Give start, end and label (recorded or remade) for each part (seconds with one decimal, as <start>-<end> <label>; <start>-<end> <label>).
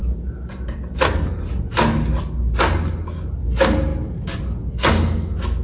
0.0-5.6 recorded